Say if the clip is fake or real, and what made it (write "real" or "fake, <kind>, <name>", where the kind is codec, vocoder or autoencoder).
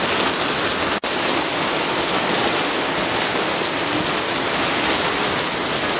real